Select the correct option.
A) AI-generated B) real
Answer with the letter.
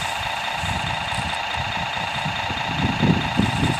A